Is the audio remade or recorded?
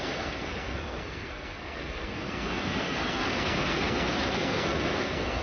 remade